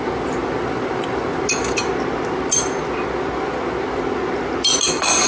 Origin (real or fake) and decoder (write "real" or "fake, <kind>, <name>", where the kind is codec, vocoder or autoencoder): real